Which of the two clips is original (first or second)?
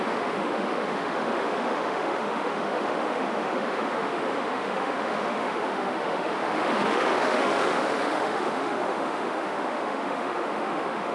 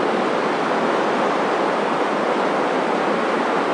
second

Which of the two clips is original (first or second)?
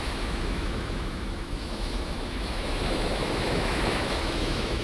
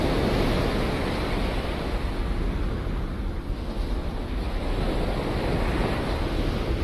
second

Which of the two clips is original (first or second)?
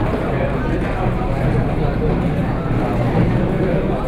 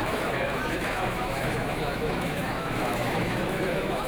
first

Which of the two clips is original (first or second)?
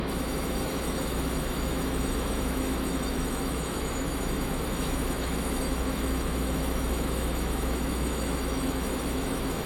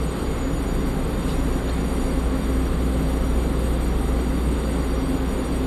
second